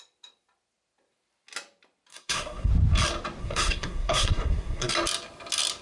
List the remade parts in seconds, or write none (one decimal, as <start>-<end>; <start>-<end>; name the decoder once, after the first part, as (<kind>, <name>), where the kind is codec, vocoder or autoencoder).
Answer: 2.1-2.7 (codec, SNAC); 3.4-4.9